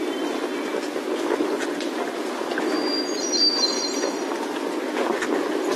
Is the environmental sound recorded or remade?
recorded